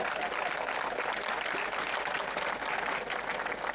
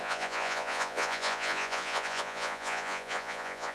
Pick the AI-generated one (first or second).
second